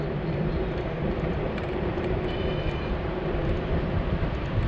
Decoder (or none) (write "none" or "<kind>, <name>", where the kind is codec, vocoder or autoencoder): vocoder, BigVGAN v2